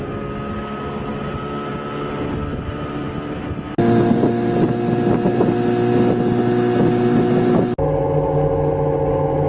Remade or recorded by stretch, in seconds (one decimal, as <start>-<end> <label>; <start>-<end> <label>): 0.0-2.5 recorded; 2.5-3.2 remade; 3.2-9.5 recorded